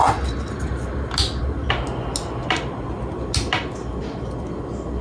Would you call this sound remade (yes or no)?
no